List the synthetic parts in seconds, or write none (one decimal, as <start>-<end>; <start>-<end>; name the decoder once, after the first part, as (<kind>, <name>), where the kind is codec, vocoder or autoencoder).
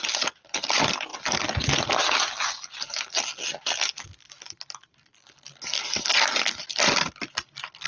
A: none